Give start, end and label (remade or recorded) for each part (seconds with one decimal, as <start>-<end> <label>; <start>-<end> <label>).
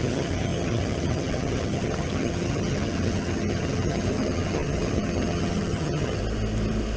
0.0-6.2 remade; 6.2-7.0 recorded